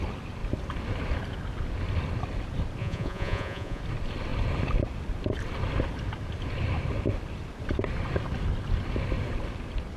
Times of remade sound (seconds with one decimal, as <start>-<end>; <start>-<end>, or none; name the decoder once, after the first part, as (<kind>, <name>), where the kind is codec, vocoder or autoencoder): 2.8-3.8 (vocoder, Vocos)